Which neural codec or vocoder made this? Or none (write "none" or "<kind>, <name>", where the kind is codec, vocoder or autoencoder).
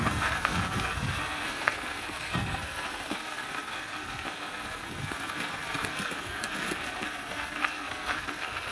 codec, SNAC